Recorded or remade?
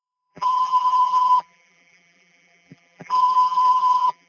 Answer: remade